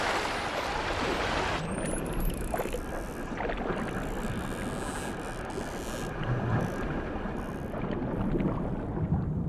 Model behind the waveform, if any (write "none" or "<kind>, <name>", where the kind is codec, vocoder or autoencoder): none